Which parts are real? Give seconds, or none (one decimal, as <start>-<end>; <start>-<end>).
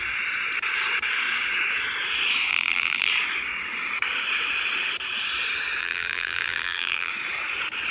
0.0-2.5; 3.1-5.8; 7.1-7.9